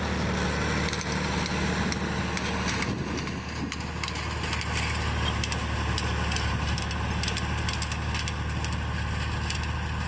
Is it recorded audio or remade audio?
recorded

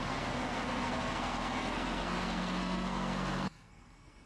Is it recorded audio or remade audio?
remade